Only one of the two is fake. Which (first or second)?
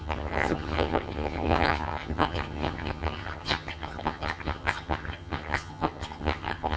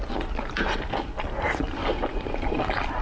first